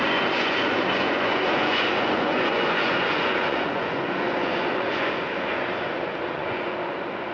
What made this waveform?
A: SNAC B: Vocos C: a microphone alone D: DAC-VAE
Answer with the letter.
B